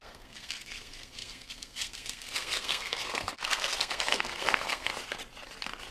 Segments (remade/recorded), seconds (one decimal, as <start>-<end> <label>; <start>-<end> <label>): 0.0-4.9 remade; 4.9-5.9 recorded